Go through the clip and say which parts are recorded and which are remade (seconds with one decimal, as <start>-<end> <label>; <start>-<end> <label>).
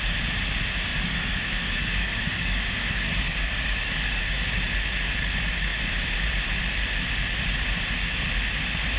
0.0-0.9 recorded; 0.9-4.2 remade; 4.2-9.0 recorded